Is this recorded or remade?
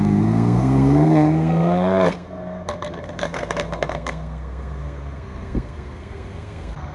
remade